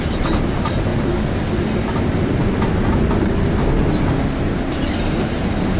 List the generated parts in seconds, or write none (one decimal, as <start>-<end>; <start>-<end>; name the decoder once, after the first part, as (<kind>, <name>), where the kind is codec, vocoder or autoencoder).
0.0-0.9 (vocoder, BigVGAN v2); 4.4-5.8